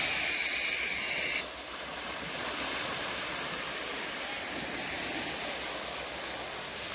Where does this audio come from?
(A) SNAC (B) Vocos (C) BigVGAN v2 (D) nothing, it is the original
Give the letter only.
D